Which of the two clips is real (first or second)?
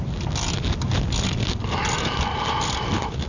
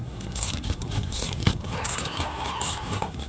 first